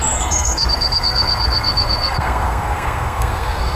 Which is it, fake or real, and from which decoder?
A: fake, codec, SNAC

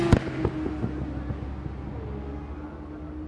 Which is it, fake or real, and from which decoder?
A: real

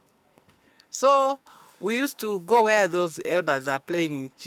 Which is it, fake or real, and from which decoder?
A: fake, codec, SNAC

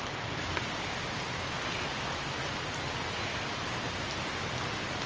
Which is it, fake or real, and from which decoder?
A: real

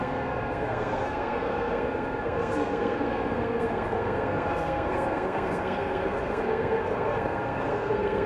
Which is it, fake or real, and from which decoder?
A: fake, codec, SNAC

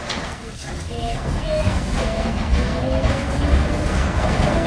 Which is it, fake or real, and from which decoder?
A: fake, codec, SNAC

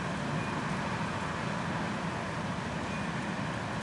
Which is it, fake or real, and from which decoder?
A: real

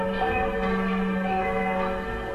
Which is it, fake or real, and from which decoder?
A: fake, codec, SNAC